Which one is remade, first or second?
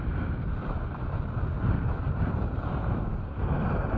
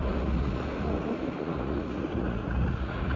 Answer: second